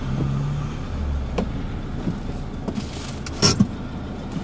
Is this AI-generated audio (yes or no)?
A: no